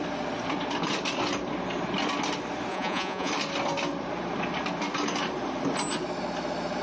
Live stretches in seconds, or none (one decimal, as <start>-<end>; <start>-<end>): 0.0-2.7; 3.3-6.8